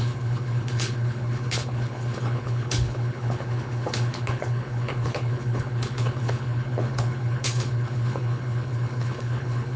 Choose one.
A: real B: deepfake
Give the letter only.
B